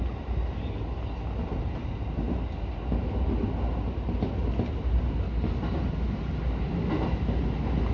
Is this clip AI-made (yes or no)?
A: no